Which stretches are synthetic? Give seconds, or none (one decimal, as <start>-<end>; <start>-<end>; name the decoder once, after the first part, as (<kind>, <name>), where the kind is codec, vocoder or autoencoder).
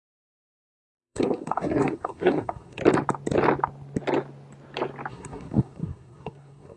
0.0-2.8 (codec, SNAC); 5.1-6.8